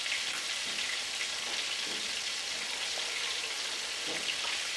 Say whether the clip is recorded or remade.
recorded